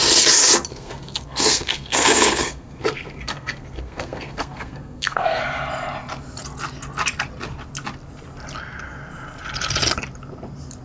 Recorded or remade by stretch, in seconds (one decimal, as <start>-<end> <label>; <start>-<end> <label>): 0.0-0.7 recorded; 0.7-5.4 remade; 5.4-10.8 recorded